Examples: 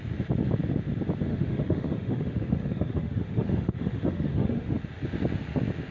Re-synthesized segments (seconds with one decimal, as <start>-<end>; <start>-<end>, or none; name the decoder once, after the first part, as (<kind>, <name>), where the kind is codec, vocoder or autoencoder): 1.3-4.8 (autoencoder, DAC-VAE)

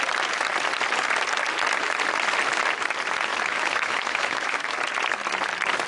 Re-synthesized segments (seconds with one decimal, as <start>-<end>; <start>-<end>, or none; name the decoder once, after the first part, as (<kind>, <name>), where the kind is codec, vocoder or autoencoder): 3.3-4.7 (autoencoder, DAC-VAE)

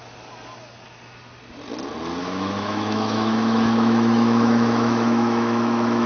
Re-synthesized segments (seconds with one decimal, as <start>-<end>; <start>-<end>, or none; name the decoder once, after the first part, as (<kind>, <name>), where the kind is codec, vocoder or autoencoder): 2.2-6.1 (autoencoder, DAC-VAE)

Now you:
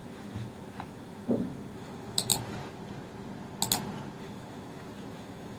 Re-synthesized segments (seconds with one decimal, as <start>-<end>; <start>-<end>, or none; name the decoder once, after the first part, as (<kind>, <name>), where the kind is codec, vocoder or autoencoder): 0.0-2.3 (autoencoder, DAC-VAE); 4.2-5.6

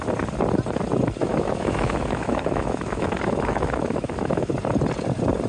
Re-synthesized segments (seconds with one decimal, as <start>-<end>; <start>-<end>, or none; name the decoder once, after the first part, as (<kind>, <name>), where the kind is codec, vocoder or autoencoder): 1.2-4.5 (autoencoder, DAC-VAE)

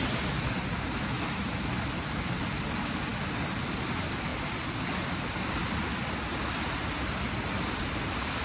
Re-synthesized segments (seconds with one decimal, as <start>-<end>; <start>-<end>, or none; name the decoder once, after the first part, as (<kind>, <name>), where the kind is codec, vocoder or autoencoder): none

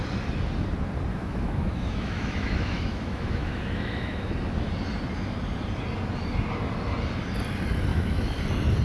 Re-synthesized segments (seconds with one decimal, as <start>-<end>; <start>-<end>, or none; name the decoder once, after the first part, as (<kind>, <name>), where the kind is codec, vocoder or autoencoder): 1.1-4.3 (autoencoder, DAC-VAE); 7.9-8.4